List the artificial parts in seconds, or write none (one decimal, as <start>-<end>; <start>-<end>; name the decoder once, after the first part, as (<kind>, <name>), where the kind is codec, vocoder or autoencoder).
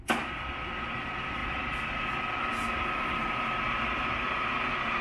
none